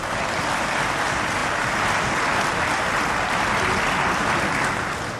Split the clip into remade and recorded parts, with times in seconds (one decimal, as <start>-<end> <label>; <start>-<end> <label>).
0.0-5.2 recorded